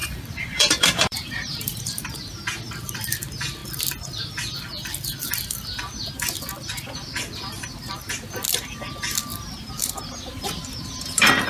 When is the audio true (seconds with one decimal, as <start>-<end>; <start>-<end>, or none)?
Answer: 2.2-9.3